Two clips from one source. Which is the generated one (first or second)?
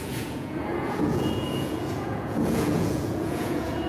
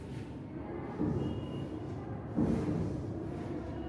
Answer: first